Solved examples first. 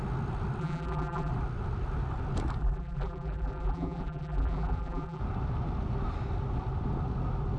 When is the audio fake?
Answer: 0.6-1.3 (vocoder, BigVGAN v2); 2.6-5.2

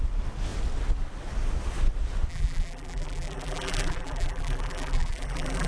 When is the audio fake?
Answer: 2.3-5.7 (vocoder, BigVGAN v2)

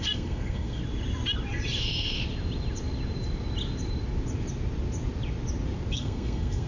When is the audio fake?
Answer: 0.0-0.8 (codec, SNAC); 1.8-2.2; 5.9-6.7

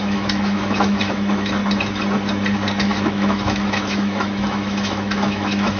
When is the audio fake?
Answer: 0.0-1.6 (autoencoder, DAC-VAE); 2.8-5.8

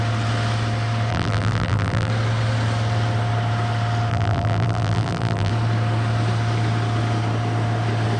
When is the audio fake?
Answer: 1.1-2.1 (vocoder, BigVGAN v2); 4.1-5.5

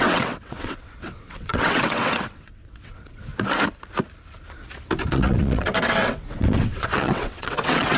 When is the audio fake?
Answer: 0.0-3.3 (vocoder, WaveNeXt); 5.1-8.0

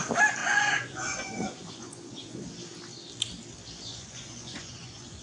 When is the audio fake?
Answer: 0.4-2.4 (vocoder, Vocos); 3.9-5.2

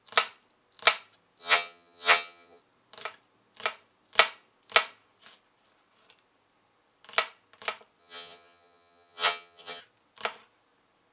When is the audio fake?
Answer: 1.4-2.6 (vocoder, HiFi-GAN); 8.0-9.8